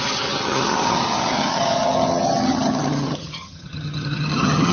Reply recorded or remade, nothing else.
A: remade